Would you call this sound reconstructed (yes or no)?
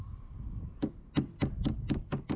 no